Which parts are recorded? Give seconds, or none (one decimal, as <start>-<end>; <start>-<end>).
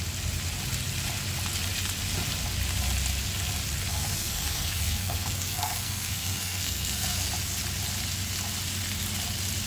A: 0.0-3.9; 7.3-9.7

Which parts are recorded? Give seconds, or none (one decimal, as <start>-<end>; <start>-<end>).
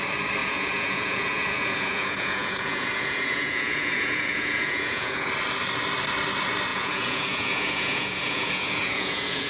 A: 0.0-0.4; 5.3-6.7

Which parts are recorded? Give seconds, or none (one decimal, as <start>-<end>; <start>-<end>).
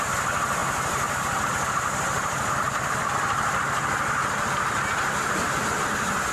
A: 0.0-6.3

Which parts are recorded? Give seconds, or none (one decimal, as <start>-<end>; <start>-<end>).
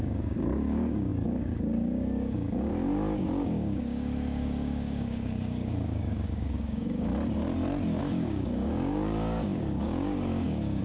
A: 7.1-8.0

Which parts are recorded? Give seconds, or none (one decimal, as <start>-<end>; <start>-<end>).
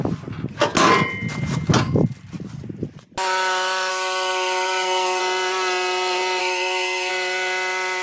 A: 0.0-3.9; 5.2-6.4; 7.1-8.0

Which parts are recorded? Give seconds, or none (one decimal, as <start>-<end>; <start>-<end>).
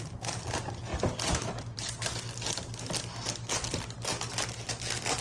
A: 0.0-5.2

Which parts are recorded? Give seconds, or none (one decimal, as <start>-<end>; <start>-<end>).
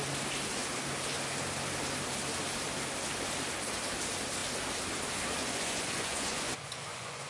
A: 0.0-5.4